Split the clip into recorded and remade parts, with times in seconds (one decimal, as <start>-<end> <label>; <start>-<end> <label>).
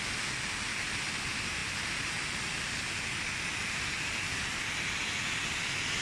0.0-6.0 recorded